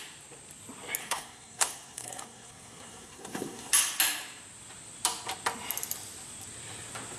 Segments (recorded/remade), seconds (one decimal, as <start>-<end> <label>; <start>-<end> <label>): 0.0-1.0 recorded; 1.0-3.7 remade; 3.7-7.2 recorded